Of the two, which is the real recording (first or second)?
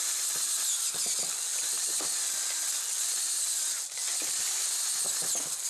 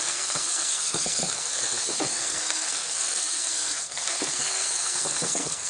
first